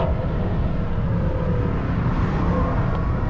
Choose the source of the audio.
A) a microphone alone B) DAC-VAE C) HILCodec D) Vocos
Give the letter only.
A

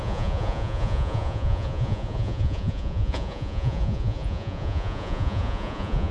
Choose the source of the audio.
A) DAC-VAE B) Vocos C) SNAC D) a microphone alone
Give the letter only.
B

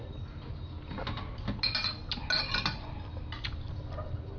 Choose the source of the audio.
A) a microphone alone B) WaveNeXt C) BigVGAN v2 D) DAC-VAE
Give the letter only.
A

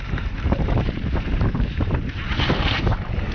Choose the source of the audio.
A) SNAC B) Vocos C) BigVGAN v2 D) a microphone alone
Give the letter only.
C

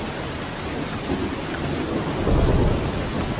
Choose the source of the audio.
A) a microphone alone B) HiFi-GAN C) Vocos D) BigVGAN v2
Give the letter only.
A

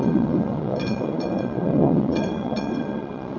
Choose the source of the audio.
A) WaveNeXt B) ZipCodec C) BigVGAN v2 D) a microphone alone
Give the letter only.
A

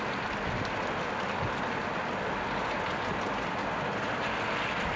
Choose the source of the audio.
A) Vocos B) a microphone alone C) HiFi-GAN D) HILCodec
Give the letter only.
B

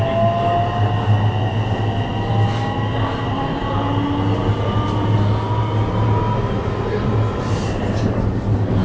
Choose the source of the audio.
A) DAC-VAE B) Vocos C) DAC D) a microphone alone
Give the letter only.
D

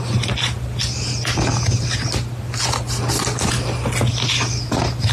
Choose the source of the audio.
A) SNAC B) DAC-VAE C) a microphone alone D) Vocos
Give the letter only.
C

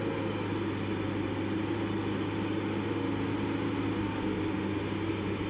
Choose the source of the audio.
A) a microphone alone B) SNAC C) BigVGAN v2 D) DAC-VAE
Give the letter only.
A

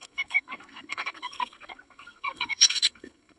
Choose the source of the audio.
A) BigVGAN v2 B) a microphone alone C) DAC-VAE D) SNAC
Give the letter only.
D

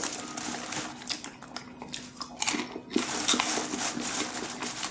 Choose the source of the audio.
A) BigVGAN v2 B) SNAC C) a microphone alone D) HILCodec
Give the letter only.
C